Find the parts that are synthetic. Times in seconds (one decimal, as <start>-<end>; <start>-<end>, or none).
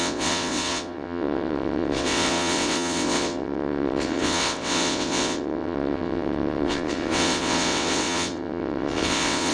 0.0-9.5